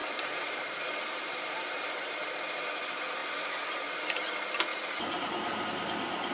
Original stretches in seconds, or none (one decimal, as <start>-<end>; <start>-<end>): 1.8-3.2; 4.0-4.7; 5.2-6.3

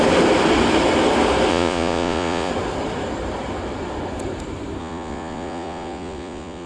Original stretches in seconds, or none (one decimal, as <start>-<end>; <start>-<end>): 0.0-1.5; 2.5-4.8

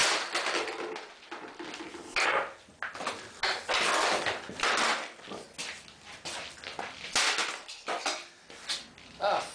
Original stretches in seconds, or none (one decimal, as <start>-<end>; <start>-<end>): 0.0-9.5

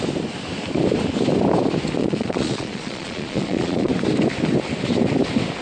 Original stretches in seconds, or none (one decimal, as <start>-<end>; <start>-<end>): 0.0-2.0; 3.9-5.6

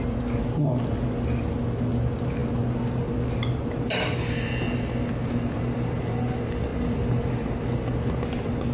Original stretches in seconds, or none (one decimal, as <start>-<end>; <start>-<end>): 0.0-8.7